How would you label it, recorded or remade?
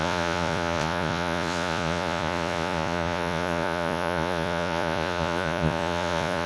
remade